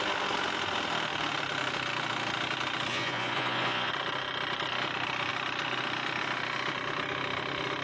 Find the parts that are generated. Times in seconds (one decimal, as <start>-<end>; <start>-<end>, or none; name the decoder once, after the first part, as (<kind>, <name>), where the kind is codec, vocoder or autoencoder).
2.9-3.9 (vocoder, Vocos)